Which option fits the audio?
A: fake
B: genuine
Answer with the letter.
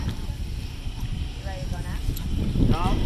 B